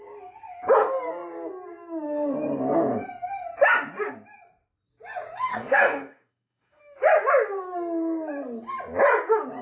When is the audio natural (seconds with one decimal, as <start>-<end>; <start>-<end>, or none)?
0.0-5.5; 6.8-9.6